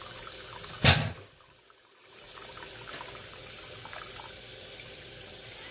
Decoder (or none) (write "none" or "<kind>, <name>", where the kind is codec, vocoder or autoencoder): none